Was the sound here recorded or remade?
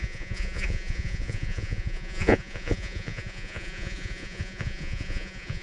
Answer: remade